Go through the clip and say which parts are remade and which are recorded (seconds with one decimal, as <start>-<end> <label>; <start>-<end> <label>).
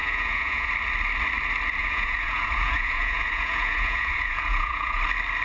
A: 0.0-0.7 remade; 0.7-1.8 recorded; 1.8-5.0 remade; 5.0-5.4 recorded